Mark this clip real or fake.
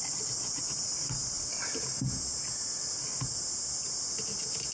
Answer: real